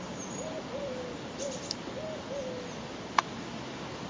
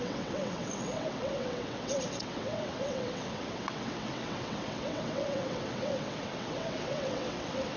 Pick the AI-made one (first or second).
second